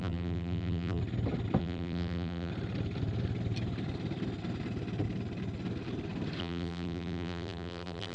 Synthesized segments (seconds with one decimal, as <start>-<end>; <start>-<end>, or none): 0.0-1.0; 1.6-2.5; 6.4-8.1